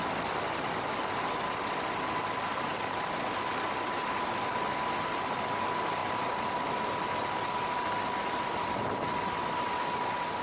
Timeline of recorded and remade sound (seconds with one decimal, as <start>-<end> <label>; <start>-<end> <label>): 0.0-10.4 recorded